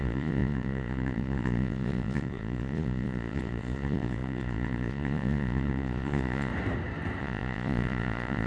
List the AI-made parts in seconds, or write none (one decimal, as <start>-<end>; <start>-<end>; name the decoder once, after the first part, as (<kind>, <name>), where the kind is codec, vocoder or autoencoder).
0.0-6.5 (vocoder, Vocos); 7.2-8.5